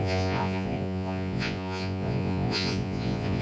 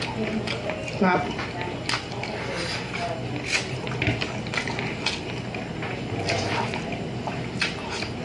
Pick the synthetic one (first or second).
first